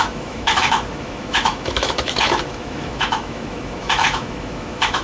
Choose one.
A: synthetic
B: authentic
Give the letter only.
A